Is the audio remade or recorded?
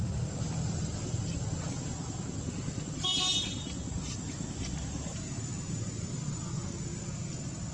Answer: recorded